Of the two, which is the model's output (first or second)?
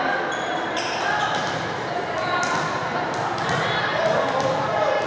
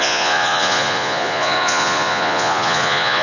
second